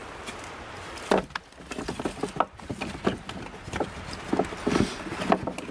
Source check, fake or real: real